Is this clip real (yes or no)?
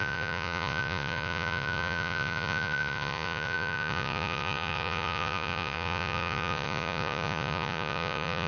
no